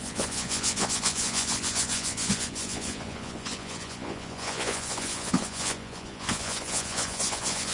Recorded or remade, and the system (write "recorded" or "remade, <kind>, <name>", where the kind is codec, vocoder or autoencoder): remade, vocoder, Vocos